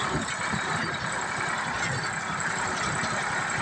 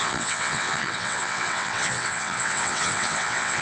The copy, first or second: second